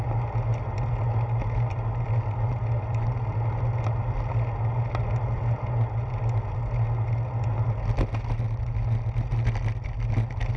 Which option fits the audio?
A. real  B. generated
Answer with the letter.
A